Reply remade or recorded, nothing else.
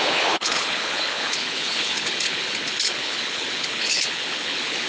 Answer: remade